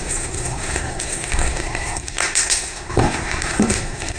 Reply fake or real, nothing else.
fake